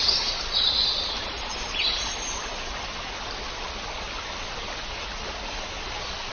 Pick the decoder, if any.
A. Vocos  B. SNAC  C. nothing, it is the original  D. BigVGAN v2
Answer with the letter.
C